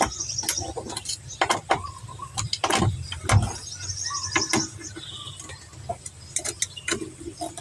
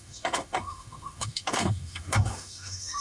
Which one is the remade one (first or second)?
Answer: second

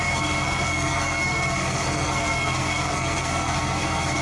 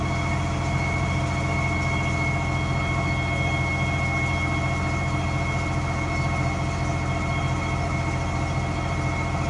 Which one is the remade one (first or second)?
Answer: first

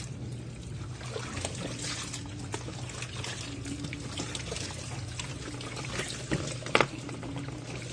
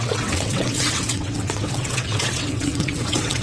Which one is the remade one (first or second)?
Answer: second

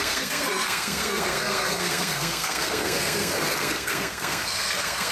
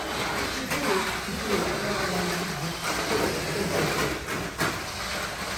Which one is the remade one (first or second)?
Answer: first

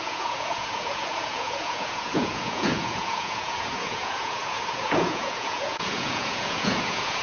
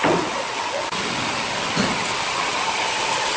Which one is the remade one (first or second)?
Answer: first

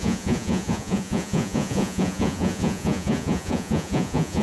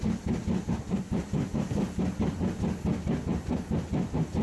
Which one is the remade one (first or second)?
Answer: first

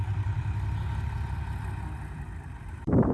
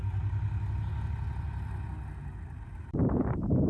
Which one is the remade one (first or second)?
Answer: first